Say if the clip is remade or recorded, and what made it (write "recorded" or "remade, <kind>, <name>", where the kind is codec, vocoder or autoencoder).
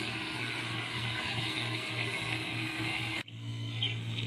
remade, codec, SNAC